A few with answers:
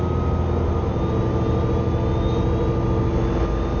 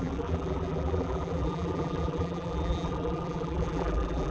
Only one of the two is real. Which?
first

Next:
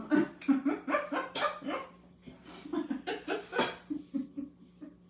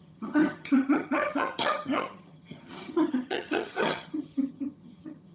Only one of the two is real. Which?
first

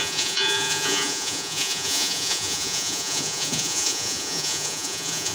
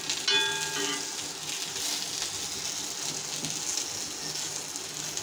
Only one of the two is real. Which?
second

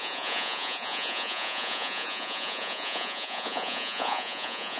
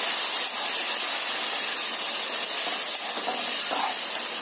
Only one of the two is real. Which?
second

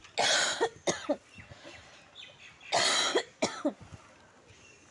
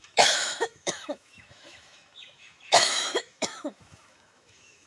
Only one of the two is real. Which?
first